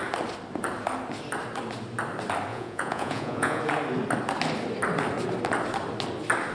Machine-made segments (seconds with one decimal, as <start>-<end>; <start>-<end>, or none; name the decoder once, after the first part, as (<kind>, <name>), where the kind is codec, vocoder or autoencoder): 2.5-3.6 (vocoder, Vocos)